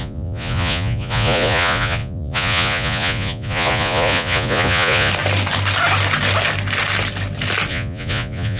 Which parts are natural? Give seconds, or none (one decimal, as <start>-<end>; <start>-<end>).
5.1-7.7